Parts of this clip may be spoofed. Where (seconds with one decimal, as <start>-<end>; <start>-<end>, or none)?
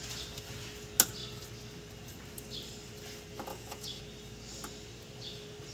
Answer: 3.5-4.0